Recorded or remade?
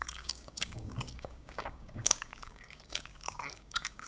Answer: remade